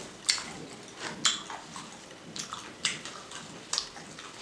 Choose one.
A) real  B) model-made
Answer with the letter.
A